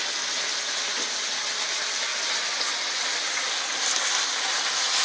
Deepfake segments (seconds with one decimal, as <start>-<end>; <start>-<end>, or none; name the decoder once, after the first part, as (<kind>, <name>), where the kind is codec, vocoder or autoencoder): none